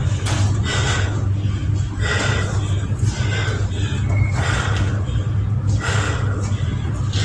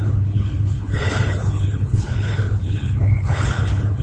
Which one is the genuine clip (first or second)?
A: first